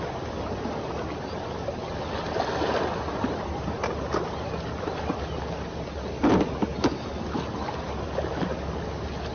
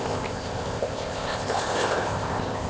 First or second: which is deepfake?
second